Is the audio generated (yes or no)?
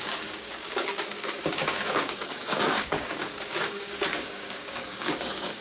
yes